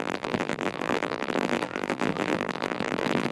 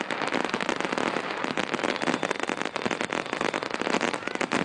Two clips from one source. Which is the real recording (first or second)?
second